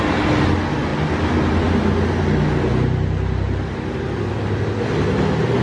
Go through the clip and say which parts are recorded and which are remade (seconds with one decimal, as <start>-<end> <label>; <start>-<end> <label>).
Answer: 0.0-5.6 recorded